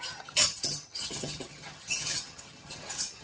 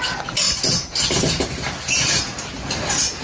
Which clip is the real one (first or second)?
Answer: second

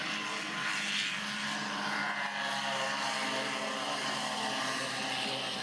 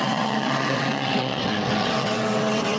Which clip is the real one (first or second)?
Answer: first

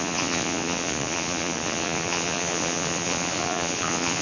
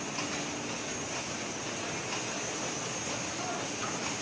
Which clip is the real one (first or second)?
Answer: second